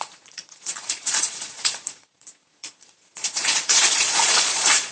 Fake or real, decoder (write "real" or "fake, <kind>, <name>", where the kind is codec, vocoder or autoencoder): fake, vocoder, Vocos